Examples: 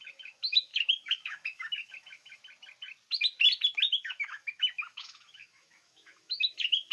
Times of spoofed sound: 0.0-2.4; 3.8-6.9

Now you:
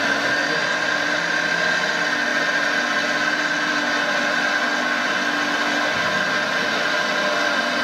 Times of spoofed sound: none

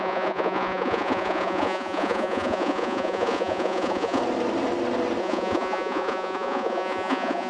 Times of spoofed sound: 0.0-4.2; 5.2-7.5

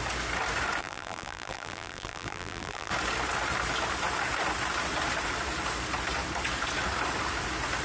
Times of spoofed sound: 0.8-2.9